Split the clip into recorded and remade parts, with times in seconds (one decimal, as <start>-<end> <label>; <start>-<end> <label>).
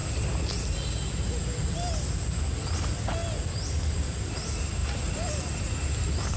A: 0.0-4.8 recorded; 4.8-5.3 remade; 5.3-6.4 recorded